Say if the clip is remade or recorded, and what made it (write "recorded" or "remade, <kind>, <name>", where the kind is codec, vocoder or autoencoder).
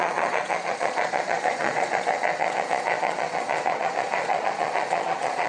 remade, vocoder, Vocos